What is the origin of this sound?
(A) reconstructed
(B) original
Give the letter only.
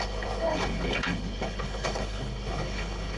A